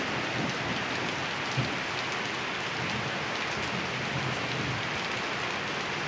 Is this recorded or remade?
recorded